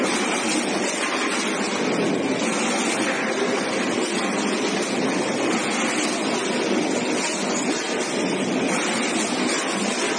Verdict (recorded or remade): recorded